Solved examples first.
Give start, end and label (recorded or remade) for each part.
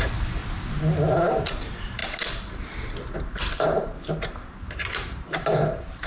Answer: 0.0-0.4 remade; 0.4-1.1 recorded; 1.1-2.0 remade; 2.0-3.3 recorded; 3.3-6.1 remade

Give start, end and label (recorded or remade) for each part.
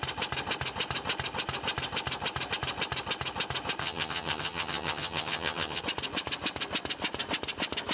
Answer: 0.0-3.8 recorded; 3.8-5.8 remade; 5.8-7.9 recorded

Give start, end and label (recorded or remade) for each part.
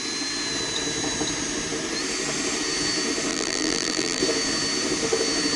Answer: 0.0-3.3 recorded; 3.3-4.2 remade; 4.2-5.6 recorded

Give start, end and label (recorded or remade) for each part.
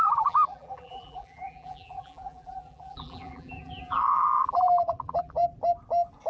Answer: 0.0-5.4 remade; 5.4-6.3 recorded